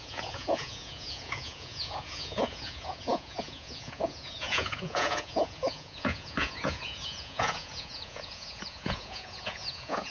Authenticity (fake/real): fake